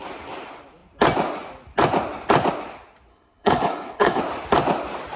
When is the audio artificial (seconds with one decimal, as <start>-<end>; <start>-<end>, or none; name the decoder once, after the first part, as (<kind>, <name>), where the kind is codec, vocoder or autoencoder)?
3.1-4.2 (codec, HILCodec)